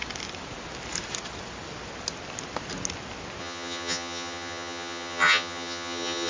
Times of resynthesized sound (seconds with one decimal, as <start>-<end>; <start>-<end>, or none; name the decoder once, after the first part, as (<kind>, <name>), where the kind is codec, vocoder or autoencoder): 3.4-6.3 (vocoder, HiFi-GAN)